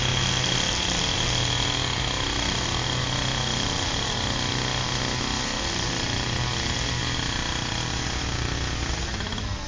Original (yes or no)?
yes